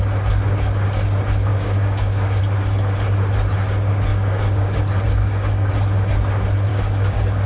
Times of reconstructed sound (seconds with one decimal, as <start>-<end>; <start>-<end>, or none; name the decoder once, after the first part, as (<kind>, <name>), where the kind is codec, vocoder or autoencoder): 1.5-2.4 (codec, DAC); 4.1-4.8; 5.2-5.7; 6.7-7.5